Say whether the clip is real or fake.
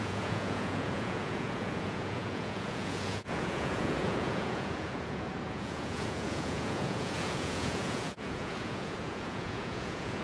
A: fake